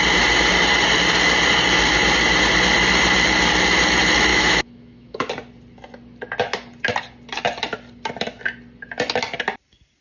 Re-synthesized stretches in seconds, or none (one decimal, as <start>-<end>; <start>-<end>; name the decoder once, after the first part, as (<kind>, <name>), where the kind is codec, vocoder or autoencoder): 4.3-5.3 (autoencoder, DAC-VAE)